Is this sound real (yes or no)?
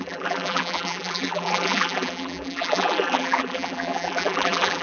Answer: no